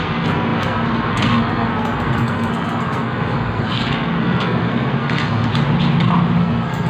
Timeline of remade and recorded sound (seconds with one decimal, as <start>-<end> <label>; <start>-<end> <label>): 0.0-5.5 remade; 5.5-6.4 recorded; 6.4-6.9 remade